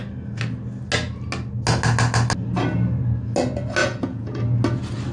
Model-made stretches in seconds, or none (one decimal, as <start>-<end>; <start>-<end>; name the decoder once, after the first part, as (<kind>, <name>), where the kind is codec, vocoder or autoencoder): 3.8-4.4 (vocoder, Vocos)